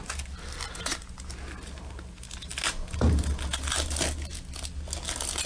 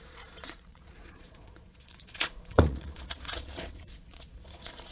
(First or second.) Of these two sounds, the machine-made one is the second